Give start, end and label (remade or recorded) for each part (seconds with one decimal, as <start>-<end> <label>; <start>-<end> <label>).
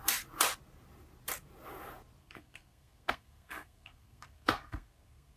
0.0-2.2 recorded; 2.2-5.4 remade